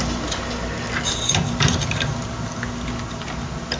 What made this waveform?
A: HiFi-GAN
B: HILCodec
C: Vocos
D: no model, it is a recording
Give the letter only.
D